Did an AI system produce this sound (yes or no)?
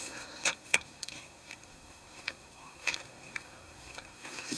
yes